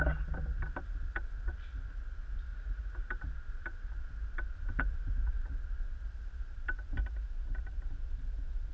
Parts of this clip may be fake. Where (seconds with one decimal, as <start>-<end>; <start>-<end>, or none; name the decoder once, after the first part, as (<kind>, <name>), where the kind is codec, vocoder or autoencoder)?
2.5-3.1 (vocoder, Vocos)